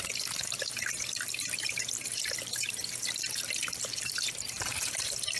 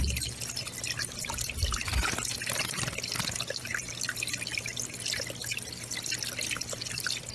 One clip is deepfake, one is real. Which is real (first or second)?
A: second